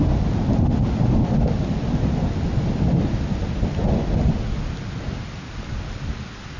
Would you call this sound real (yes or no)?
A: yes